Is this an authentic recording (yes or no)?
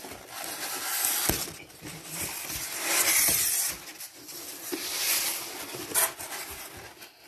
yes